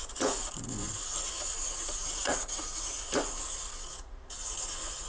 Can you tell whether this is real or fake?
fake